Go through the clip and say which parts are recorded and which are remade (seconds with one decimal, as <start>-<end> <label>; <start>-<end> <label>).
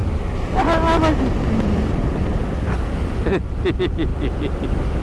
0.0-5.0 recorded